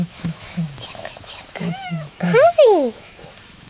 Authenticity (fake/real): fake